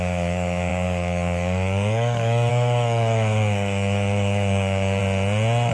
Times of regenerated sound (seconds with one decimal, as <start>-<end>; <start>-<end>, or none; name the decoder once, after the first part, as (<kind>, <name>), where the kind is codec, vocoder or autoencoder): 0.0-5.0 (codec, DAC)